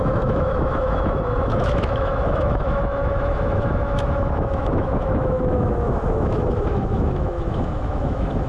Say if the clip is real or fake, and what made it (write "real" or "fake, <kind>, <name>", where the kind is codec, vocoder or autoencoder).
fake, autoencoder, DAC-VAE